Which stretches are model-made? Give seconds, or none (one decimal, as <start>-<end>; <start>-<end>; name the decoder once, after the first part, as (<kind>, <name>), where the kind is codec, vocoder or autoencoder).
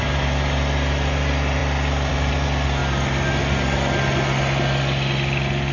none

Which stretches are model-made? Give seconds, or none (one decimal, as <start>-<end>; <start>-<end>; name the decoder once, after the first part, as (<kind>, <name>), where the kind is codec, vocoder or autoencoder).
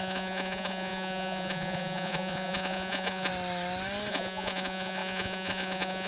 0.0-3.3 (vocoder, Vocos); 4.1-6.1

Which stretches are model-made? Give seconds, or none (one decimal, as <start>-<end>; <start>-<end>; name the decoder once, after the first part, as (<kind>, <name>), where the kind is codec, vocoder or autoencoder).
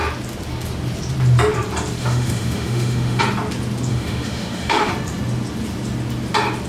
2.0-3.2 (autoencoder, DAC-VAE); 3.9-4.9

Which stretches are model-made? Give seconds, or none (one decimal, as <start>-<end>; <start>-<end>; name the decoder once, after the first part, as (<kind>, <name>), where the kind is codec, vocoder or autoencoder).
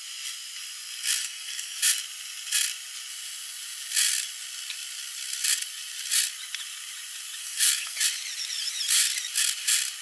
1.2-1.8 (codec, SNAC); 7.4-8.0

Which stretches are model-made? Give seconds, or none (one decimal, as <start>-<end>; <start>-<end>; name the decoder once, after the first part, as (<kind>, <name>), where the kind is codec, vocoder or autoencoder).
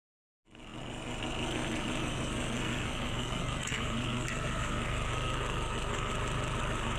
0.0-6.1 (codec, SNAC); 6.6-7.0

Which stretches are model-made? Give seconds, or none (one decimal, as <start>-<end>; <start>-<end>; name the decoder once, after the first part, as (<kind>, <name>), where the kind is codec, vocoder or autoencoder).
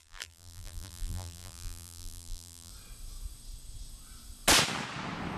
0.0-2.7 (vocoder, BigVGAN v2)